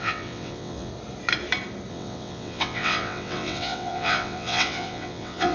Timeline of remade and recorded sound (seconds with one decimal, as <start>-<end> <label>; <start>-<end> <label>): 0.0-0.9 remade; 0.9-1.9 recorded; 1.9-5.5 remade